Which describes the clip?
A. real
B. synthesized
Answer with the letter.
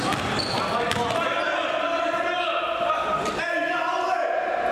A